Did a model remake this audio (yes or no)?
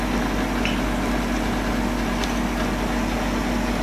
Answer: no